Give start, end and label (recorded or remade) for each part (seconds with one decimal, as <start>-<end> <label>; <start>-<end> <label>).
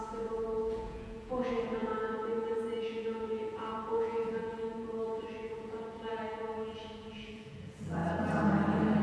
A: 0.0-8.0 remade; 8.0-9.0 recorded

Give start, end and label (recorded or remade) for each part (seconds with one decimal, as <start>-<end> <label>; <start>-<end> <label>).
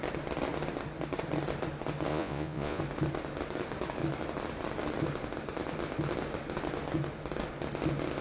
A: 0.0-2.1 recorded; 2.1-2.8 remade; 2.8-8.2 recorded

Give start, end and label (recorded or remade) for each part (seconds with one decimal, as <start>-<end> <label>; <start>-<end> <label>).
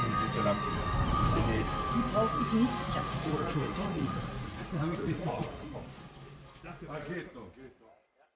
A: 0.0-2.9 recorded; 2.9-5.7 remade; 5.7-8.4 recorded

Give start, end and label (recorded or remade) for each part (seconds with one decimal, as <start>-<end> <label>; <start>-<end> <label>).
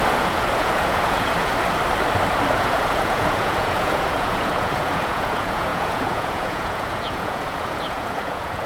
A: 0.0-1.5 remade; 1.5-2.5 recorded; 2.5-8.7 remade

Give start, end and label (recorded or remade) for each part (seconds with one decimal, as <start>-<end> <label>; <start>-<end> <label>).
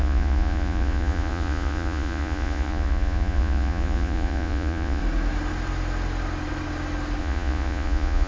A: 0.0-5.0 remade; 5.0-7.2 recorded; 7.2-8.3 remade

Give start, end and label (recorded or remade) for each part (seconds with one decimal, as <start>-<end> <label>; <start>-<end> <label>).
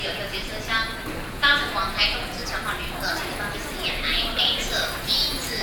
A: 0.0-0.5 remade; 0.5-1.3 recorded; 1.3-2.4 remade; 2.4-5.0 recorded; 5.0-5.6 remade